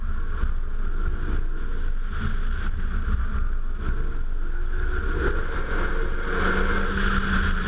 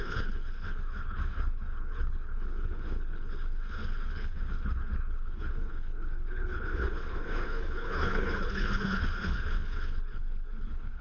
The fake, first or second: second